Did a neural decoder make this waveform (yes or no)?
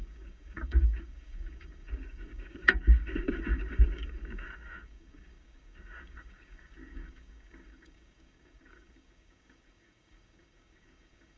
yes